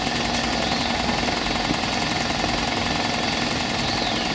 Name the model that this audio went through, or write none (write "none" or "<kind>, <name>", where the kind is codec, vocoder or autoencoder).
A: none